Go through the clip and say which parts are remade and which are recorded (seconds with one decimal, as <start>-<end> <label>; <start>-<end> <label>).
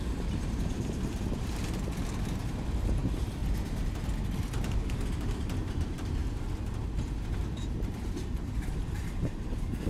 0.0-3.4 remade; 3.4-4.7 recorded; 4.7-6.2 remade; 6.2-7.1 recorded; 7.1-9.9 remade